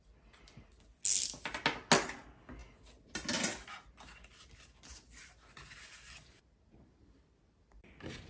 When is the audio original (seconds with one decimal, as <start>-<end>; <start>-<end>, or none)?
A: 0.0-8.3